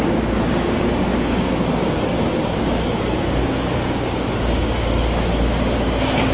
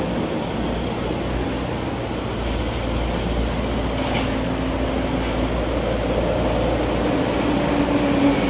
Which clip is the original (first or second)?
second